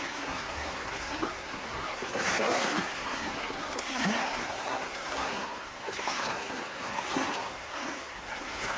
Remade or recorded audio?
remade